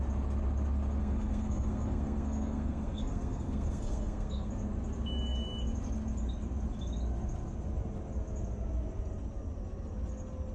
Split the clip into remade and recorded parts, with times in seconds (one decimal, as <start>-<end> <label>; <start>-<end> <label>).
0.0-1.0 recorded; 1.0-4.5 remade; 4.5-10.5 recorded

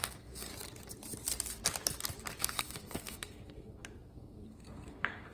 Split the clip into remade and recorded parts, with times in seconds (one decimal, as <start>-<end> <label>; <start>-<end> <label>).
0.0-0.5 remade; 0.5-2.4 recorded; 2.4-5.3 remade

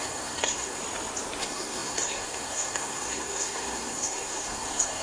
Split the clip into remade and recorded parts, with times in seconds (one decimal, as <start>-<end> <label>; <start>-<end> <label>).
0.0-0.8 remade; 0.8-1.4 recorded; 1.4-5.0 remade

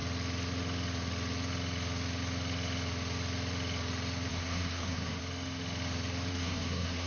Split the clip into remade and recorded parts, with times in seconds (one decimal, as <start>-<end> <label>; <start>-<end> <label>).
0.0-4.3 recorded; 4.3-5.2 remade; 5.2-6.3 recorded; 6.3-7.1 remade